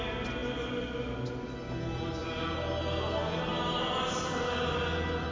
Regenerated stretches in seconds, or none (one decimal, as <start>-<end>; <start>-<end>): none